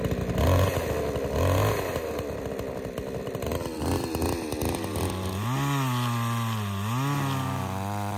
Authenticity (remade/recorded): recorded